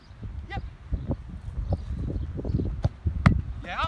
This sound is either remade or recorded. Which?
recorded